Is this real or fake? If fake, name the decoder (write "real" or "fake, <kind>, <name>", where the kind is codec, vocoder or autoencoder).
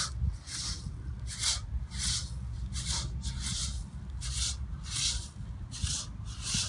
real